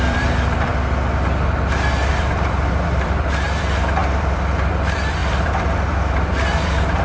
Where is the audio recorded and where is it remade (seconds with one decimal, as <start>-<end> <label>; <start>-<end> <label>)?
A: 0.0-0.7 remade; 0.7-2.1 recorded; 2.1-7.0 remade